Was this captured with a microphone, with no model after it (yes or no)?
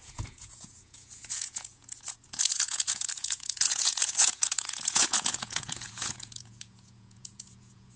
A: no